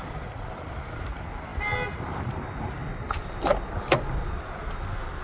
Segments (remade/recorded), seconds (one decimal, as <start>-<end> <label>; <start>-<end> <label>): 0.0-5.2 recorded